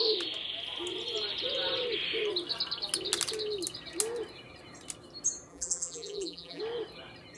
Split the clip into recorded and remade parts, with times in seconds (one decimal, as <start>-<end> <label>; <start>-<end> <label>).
0.0-5.5 recorded; 5.5-6.6 remade; 6.6-7.4 recorded